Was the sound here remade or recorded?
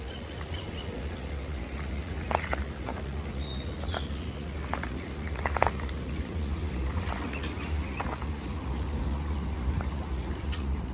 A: remade